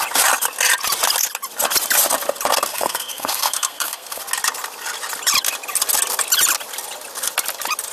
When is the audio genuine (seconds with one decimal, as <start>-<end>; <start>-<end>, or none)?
0.0-2.7; 4.2-7.9